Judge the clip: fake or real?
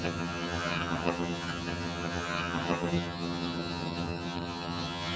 fake